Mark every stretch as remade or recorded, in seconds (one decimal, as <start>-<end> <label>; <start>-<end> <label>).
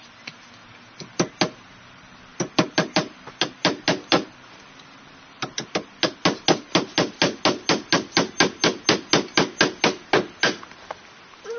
0.0-11.6 recorded